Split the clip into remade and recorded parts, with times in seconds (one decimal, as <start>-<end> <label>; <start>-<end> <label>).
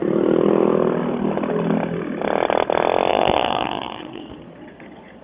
0.0-3.1 recorded; 3.1-5.2 remade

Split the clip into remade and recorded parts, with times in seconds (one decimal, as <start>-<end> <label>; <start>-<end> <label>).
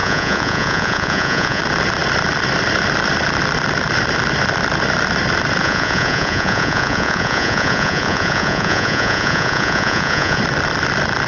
0.0-1.6 remade; 1.6-5.6 recorded; 5.6-10.4 remade; 10.4-11.3 recorded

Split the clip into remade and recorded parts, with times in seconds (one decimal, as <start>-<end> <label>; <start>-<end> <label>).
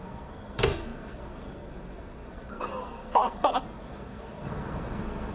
0.0-5.3 remade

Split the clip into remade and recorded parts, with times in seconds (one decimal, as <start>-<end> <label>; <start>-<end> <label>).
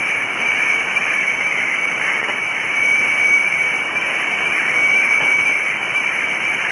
0.0-6.7 remade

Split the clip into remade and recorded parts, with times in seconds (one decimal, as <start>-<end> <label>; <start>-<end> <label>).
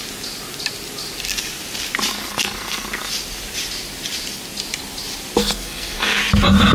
0.0-2.1 recorded; 2.1-3.1 remade; 3.1-5.4 recorded; 5.4-6.2 remade; 6.2-6.7 recorded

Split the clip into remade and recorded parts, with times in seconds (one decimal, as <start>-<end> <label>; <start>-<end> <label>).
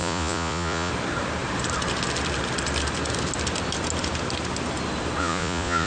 0.0-0.9 remade; 0.9-5.2 recorded; 5.2-5.9 remade